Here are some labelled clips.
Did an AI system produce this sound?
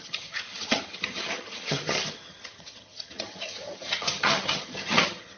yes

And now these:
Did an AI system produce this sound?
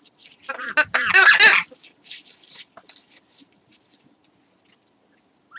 no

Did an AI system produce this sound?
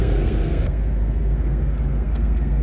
yes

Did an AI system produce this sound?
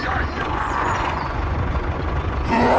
yes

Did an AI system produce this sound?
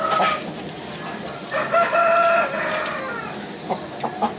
no